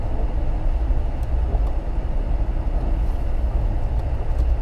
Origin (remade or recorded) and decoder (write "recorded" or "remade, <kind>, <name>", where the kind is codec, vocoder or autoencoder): recorded